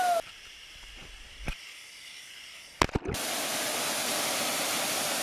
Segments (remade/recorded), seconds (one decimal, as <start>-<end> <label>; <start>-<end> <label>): 0.0-5.2 recorded